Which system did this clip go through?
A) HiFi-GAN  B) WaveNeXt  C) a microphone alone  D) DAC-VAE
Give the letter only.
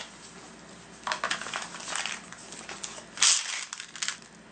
C